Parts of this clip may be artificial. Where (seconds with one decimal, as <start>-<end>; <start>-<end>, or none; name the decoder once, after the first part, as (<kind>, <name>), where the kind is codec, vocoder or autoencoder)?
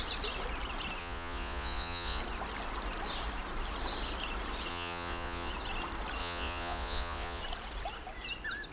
1.0-2.2 (vocoder, Vocos); 4.7-5.5; 6.2-7.4